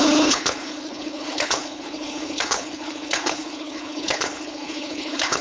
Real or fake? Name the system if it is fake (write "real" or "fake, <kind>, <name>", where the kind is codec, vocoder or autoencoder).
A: fake, codec, HILCodec